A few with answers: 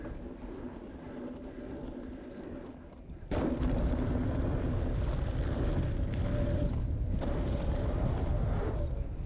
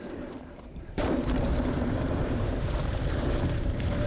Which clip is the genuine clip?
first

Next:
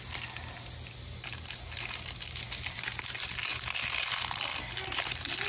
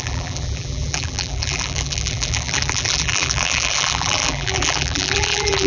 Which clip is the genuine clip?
first